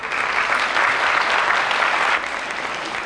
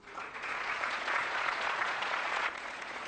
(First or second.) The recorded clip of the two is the first